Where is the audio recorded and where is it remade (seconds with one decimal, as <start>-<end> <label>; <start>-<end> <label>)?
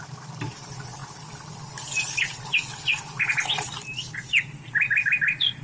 0.0-5.6 recorded